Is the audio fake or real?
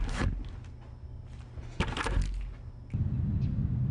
real